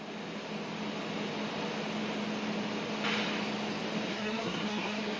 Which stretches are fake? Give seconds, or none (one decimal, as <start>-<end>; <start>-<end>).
4.1-5.2

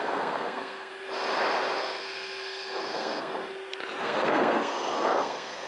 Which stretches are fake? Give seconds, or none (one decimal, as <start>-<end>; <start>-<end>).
0.0-0.9; 1.8-3.3; 4.0-5.7

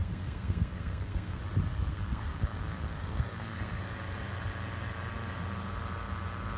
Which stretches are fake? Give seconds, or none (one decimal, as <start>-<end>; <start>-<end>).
0.0-1.4; 1.9-3.8

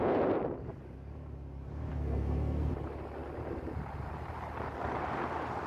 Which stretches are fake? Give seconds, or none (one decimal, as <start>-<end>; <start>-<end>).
1.9-2.7